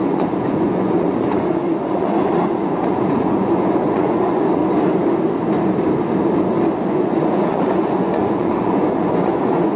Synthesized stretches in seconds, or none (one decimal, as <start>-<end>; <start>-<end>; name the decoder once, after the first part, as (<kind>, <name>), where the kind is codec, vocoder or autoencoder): 0.0-4.6 (vocoder, Vocos); 6.8-9.8